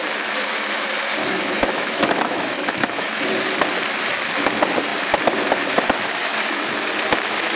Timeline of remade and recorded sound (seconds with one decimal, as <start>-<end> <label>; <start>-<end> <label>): 0.0-1.2 recorded; 1.2-3.2 remade; 3.2-6.2 recorded; 6.2-6.7 remade; 6.7-7.6 recorded